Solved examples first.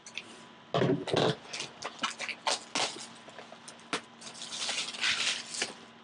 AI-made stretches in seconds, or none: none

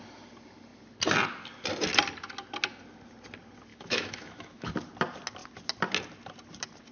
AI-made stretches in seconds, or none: 3.7-4.7 (autoencoder, DAC-VAE)

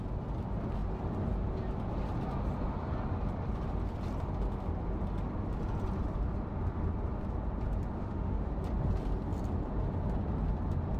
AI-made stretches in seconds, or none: 8.0-8.5 (autoencoder, DAC-VAE)